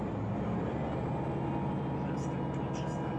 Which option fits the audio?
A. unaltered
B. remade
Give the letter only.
A